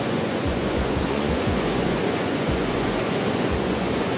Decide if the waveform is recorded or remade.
remade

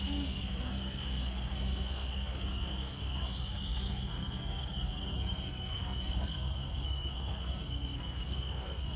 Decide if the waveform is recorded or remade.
remade